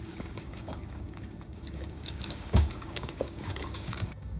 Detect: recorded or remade remade